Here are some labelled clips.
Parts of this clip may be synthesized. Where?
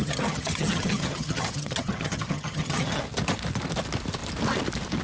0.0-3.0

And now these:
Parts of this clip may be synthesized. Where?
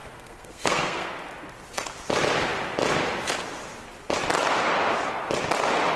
0.0-1.1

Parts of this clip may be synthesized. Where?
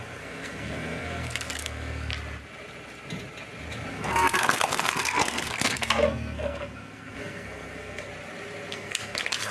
0.0-2.1; 3.9-8.1; 8.7-9.5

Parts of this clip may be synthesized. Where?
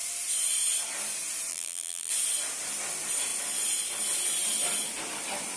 1.5-2.1